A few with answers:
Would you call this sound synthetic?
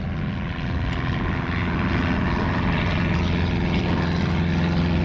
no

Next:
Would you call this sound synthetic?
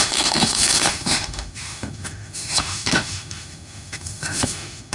yes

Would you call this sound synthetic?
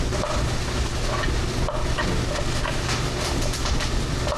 no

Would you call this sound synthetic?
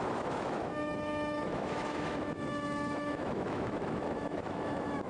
yes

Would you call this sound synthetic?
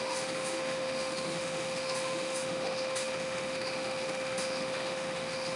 yes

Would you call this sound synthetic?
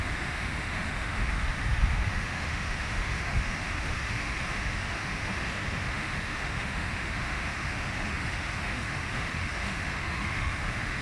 yes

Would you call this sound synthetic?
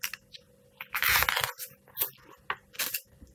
no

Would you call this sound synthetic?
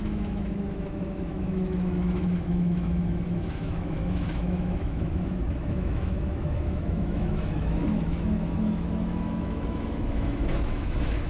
yes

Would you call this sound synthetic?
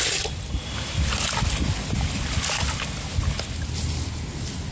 no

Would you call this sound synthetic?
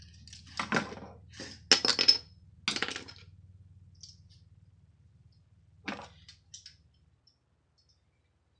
no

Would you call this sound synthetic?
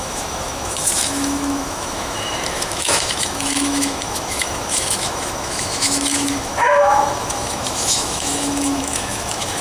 yes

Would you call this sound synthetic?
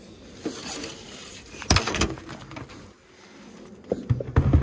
no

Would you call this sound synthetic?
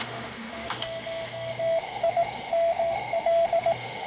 yes